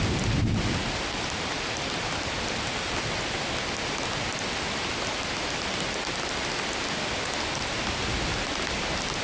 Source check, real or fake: real